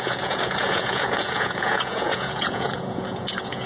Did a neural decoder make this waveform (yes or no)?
yes